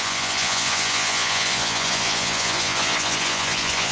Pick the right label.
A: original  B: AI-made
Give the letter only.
B